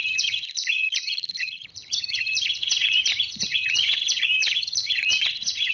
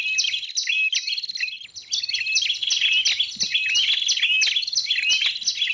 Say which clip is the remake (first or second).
first